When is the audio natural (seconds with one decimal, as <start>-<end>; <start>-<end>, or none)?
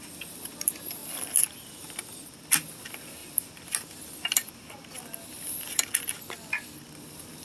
0.0-7.4